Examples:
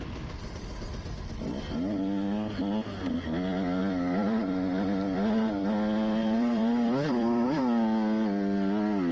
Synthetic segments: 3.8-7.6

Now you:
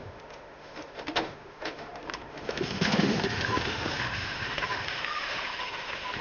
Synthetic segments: 0.0-6.2